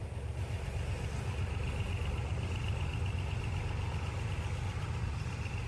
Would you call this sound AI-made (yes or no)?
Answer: no